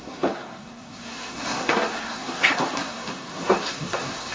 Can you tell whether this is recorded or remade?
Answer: remade